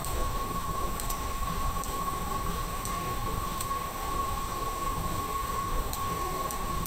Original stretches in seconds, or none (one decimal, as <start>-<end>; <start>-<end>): none